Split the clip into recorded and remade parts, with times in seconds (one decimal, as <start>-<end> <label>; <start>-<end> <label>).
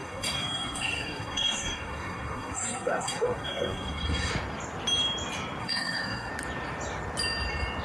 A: 0.0-4.3 remade; 4.3-5.6 recorded; 5.6-6.3 remade; 6.3-7.8 recorded